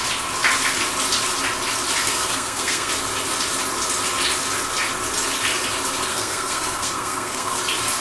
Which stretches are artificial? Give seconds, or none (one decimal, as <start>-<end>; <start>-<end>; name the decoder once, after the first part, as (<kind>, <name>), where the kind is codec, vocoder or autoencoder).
2.0-2.9 (codec, SNAC); 6.1-7.6

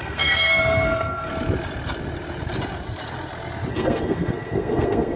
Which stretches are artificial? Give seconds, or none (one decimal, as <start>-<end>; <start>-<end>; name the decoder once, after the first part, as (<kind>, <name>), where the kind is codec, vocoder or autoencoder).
0.0-1.3 (codec, SNAC); 3.7-5.2

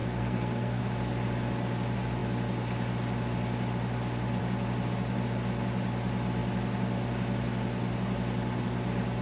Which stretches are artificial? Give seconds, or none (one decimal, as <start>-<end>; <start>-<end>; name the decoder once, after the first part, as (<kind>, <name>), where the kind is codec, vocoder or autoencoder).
0.0-0.8 (codec, SNAC)

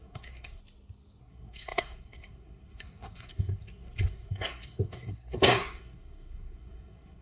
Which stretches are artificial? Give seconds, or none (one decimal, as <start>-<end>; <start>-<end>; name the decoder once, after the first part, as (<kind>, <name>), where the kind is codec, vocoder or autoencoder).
0.0-0.6 (codec, SNAC); 1.2-7.2

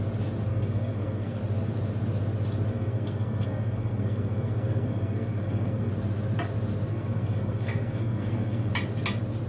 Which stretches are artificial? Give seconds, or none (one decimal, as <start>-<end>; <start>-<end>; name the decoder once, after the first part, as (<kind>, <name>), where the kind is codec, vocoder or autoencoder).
0.5-1.4 (codec, SNAC); 2.7-5.9; 6.9-8.7

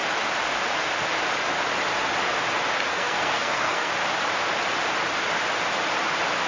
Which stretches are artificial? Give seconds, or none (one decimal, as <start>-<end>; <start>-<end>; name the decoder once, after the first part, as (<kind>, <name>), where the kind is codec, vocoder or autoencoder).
2.9-3.9 (codec, SNAC)

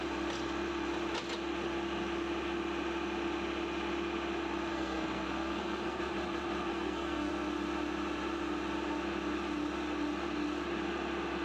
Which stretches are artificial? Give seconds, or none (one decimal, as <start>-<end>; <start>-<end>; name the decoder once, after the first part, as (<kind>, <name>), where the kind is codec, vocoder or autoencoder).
4.7-6.0 (codec, SNAC); 6.7-7.3

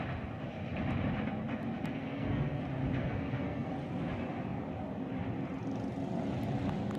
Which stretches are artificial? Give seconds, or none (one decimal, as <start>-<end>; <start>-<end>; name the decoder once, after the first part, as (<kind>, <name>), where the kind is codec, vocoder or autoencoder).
2.0-2.6 (codec, SNAC); 3.0-3.7